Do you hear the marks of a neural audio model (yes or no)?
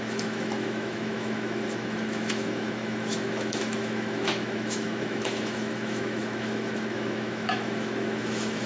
yes